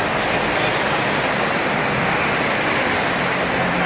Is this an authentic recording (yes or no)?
yes